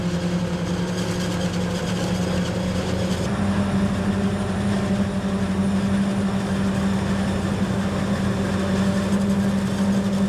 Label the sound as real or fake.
real